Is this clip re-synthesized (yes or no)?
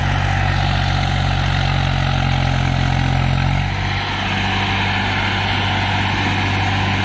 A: no